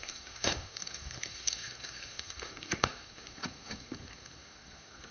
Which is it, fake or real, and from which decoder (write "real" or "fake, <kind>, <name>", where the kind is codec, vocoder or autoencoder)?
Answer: fake, codec, SNAC